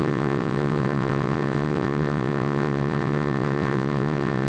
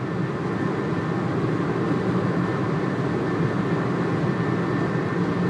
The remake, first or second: first